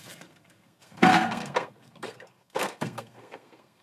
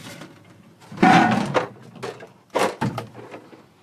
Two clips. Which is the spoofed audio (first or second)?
first